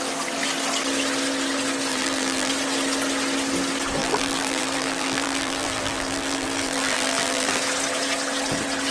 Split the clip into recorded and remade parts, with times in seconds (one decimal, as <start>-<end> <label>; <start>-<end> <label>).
0.0-1.9 recorded; 1.9-2.5 remade; 2.5-4.0 recorded; 4.0-7.6 remade; 7.6-8.9 recorded

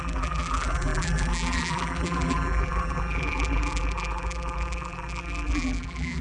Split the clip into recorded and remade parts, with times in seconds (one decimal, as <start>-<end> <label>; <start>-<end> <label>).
0.0-6.2 remade